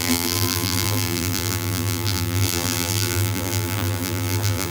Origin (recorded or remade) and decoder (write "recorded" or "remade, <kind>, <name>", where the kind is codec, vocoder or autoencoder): remade, vocoder, BigVGAN v2